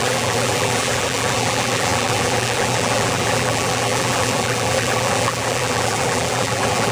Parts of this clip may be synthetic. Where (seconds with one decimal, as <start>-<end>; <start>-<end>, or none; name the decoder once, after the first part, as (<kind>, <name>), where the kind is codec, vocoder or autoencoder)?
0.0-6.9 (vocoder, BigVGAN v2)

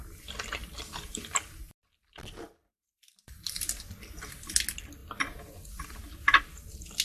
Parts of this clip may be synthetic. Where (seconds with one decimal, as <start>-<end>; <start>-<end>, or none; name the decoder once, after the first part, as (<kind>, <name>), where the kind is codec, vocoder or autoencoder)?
0.6-4.6 (vocoder, BigVGAN v2); 5.0-5.9

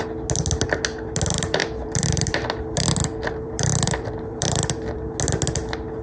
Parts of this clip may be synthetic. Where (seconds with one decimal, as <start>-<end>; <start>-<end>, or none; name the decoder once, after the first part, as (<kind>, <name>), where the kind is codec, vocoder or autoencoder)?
1.6-5.2 (vocoder, BigVGAN v2)

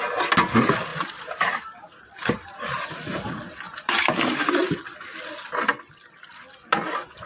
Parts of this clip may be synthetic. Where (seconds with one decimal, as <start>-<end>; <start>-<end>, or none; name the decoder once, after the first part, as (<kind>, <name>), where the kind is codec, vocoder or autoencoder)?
0.9-4.7 (vocoder, BigVGAN v2)

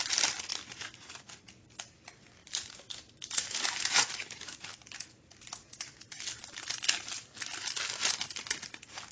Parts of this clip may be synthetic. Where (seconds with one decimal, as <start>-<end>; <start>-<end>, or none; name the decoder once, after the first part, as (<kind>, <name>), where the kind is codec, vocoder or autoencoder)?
0.5-1.5 (vocoder, BigVGAN v2); 2.4-6.4